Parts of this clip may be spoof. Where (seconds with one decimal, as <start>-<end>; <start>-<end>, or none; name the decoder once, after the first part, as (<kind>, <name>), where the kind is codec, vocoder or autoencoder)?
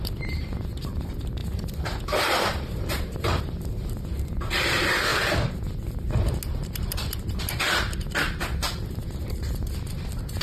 1.4-3.4 (vocoder, BigVGAN v2)